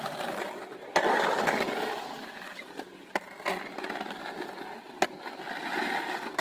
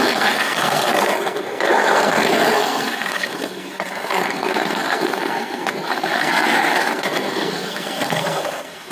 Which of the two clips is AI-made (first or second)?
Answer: second